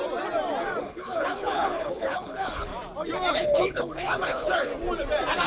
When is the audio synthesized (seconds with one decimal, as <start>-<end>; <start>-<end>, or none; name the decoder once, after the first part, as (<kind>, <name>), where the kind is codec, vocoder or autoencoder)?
0.8-2.7 (codec, HILCodec); 3.3-4.7